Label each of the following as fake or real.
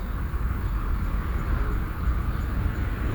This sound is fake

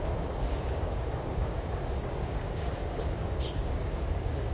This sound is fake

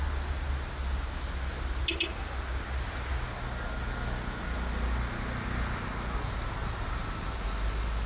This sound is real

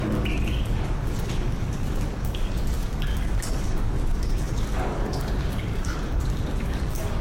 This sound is fake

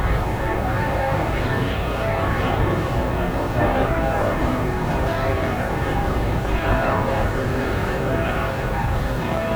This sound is fake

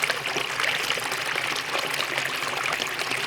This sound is real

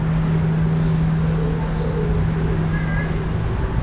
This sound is real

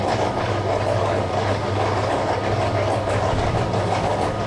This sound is fake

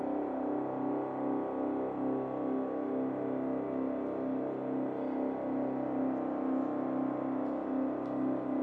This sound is real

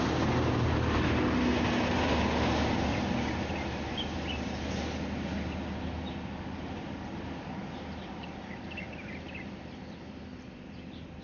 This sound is real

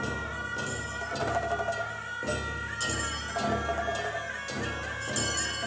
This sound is real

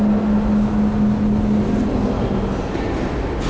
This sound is real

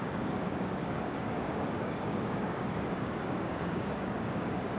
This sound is fake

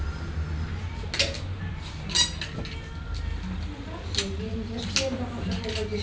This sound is real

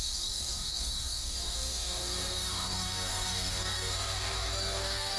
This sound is fake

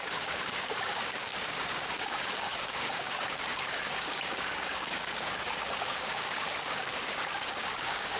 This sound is fake